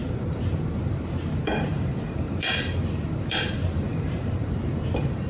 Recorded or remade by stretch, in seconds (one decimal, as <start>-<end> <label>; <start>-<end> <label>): 0.0-5.3 remade